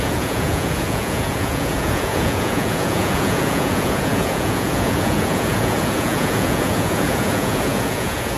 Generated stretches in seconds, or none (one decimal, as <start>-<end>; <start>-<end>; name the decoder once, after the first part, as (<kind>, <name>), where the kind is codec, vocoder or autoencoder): 0.0-8.4 (vocoder, Vocos)